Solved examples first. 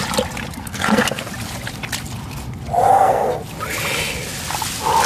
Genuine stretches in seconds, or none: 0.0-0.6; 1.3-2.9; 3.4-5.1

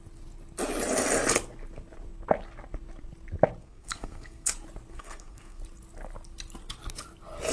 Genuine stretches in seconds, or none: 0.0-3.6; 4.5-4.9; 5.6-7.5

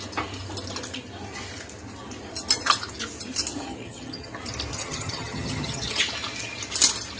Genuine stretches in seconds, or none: 0.0-3.7; 4.3-4.7; 6.0-7.2

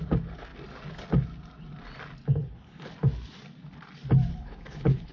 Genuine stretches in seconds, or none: 0.0-2.4; 2.9-4.3